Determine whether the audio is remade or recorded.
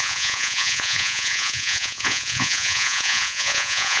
remade